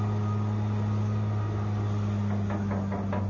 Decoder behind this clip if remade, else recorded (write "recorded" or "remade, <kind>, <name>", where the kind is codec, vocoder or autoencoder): recorded